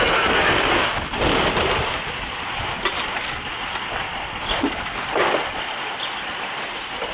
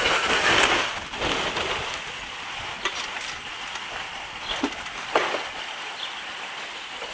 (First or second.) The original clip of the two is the first